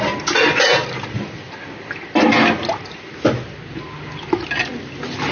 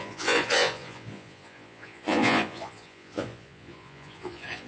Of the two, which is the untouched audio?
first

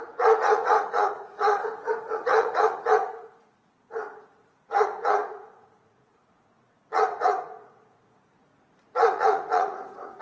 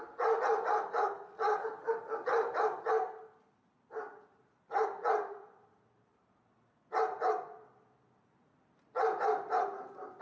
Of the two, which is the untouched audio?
second